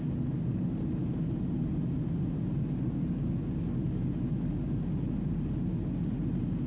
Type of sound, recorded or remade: recorded